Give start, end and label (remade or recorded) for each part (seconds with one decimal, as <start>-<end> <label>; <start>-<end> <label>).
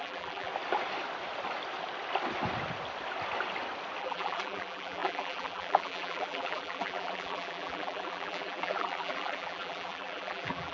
0.0-0.5 remade; 0.5-4.0 recorded; 4.0-10.7 remade